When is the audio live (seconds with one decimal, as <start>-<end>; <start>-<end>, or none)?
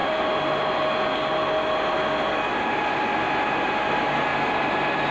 0.0-5.1